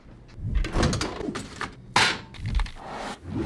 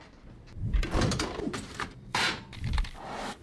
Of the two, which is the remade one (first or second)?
second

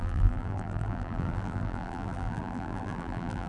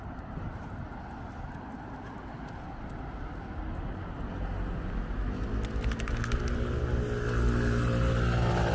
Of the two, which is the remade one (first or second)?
first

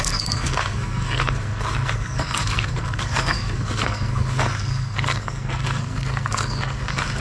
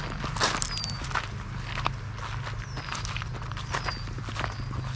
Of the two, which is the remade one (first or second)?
first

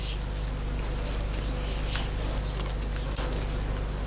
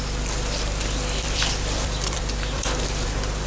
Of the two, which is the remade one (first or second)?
second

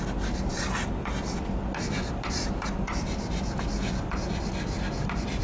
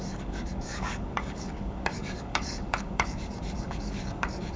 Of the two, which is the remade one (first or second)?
second